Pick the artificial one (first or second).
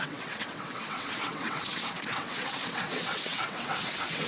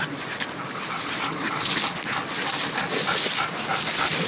first